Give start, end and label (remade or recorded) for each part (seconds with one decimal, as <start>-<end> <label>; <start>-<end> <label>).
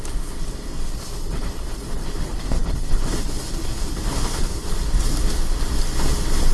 0.0-0.9 recorded; 0.9-4.8 remade; 4.8-6.5 recorded